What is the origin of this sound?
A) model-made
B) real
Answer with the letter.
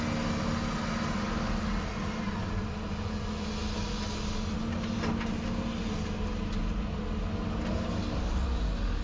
B